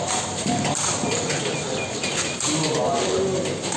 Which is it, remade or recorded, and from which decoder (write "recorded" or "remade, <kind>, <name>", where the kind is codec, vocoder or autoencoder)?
recorded